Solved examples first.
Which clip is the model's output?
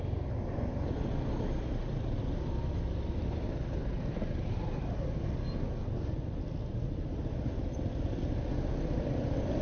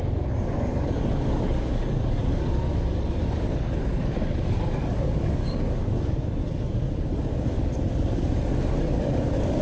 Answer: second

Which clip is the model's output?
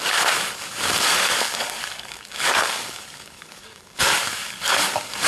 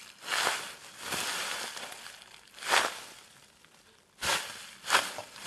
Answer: first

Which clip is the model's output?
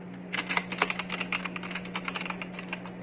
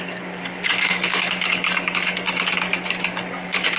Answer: second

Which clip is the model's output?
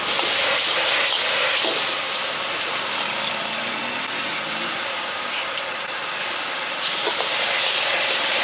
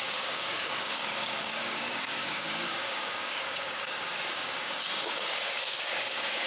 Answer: second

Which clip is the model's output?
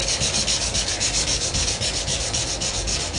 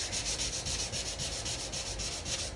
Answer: first